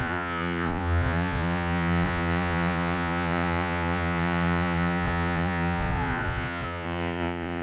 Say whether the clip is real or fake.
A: fake